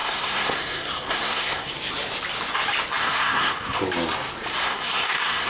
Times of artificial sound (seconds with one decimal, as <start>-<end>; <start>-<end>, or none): 0.0-1.7; 3.0-3.8; 4.6-5.5